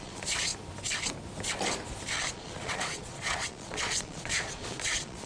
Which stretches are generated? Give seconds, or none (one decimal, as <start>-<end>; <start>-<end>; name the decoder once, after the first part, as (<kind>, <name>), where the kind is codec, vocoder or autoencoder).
0.0-0.5 (vocoder, Vocos); 2.3-5.3